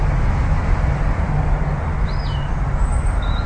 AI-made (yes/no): no